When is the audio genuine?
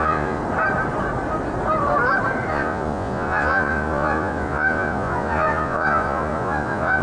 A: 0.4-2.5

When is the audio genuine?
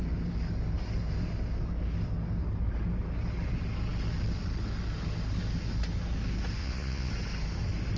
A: 0.0-6.6; 7.1-8.0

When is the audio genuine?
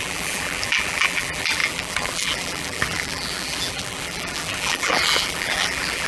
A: none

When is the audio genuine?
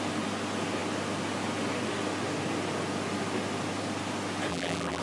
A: 0.0-4.5